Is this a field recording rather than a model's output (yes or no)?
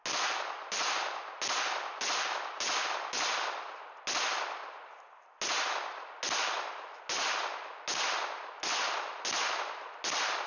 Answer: yes